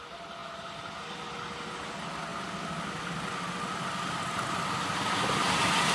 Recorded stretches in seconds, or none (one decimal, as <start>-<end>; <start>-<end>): 0.0-5.9